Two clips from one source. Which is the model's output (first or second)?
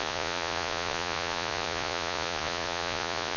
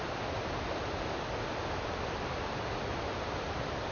first